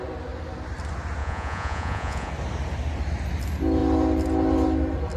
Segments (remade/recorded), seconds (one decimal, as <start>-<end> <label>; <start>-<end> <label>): 0.0-1.2 recorded; 1.2-2.3 remade; 2.3-5.2 recorded